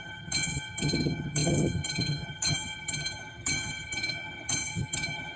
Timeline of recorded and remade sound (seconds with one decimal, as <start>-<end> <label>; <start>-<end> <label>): 0.0-5.4 remade